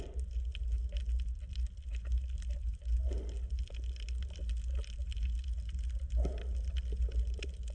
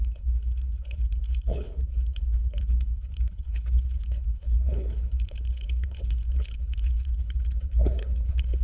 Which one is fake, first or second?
second